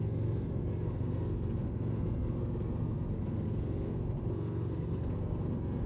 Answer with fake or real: fake